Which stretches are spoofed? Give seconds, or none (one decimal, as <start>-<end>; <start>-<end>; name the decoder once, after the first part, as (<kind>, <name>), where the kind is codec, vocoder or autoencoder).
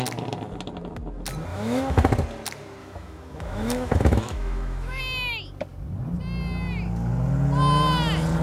1.5-2.1 (autoencoder, DAC-VAE); 2.8-5.0